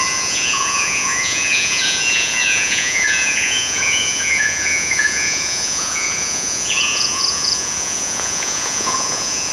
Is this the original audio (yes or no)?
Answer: no